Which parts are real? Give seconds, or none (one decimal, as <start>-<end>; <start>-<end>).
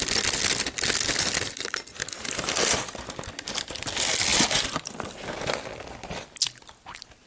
0.0-4.3; 5.4-7.3